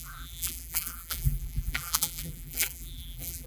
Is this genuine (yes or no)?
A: no